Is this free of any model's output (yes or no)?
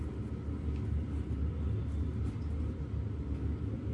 yes